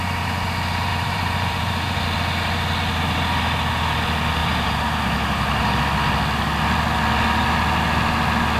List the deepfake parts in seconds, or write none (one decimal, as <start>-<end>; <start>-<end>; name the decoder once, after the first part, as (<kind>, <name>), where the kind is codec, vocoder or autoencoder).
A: 0.9-2.0 (vocoder, BigVGAN v2); 4.4-5.8